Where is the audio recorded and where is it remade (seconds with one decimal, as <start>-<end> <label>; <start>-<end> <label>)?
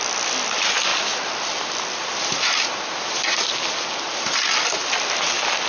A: 0.0-5.7 recorded